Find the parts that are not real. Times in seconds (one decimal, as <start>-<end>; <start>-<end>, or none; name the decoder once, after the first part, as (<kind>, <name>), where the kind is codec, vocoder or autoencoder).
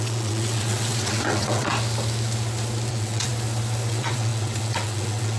0.0-1.7 (vocoder, WaveNeXt); 2.9-3.3; 3.9-5.4